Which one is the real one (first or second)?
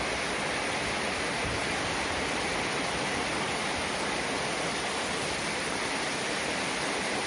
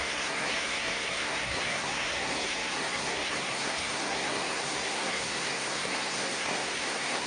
first